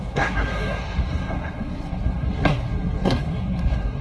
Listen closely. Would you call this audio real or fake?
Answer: fake